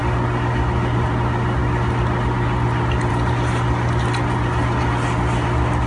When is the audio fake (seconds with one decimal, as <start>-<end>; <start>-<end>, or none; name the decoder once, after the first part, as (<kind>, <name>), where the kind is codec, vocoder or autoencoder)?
none

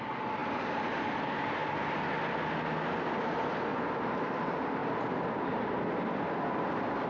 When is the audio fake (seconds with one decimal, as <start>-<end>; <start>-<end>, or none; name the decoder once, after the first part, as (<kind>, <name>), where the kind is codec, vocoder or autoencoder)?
none

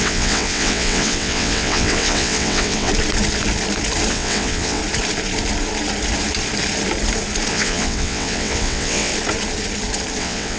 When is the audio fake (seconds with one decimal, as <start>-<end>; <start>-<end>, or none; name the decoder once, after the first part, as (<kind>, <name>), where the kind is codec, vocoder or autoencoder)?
0.0-2.9 (vocoder, WaveNeXt); 4.1-4.8; 7.5-9.1; 10.2-10.6

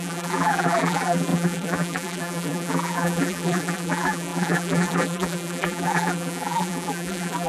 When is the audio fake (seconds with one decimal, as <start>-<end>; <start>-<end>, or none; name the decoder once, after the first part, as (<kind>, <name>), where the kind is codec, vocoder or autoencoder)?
0.0-7.5 (vocoder, BigVGAN v2)

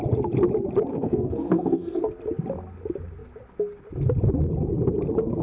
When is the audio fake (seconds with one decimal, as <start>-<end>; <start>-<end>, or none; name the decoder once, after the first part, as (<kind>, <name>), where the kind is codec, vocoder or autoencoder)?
0.9-2.0 (codec, SNAC)